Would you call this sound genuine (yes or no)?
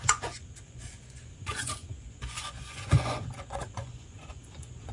no